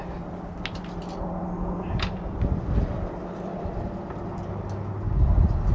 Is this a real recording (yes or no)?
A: yes